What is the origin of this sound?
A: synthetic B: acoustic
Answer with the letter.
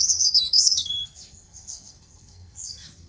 A